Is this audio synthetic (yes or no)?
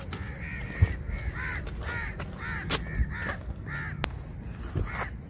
no